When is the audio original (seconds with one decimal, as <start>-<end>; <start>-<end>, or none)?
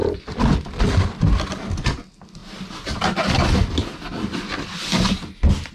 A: 0.0-5.7